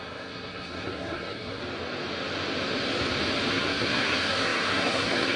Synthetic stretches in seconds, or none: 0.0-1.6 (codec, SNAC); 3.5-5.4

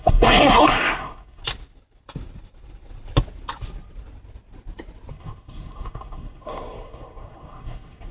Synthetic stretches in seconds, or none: 0.0-1.4 (codec, SNAC); 5.1-8.1

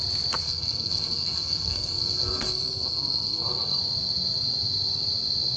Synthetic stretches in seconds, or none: 0.4-3.8 (codec, SNAC)

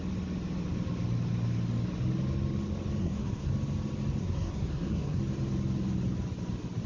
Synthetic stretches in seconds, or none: 3.0-3.5 (codec, SNAC); 4.2-5.2

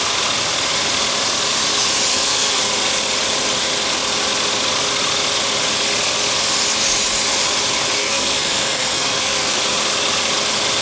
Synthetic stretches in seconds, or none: 2.1-2.6 (codec, SNAC); 8.0-9.6

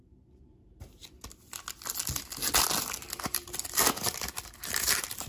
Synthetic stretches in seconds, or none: none

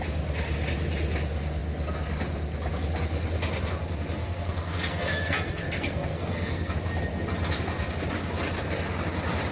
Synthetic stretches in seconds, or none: 4.2-6.7 (codec, SNAC)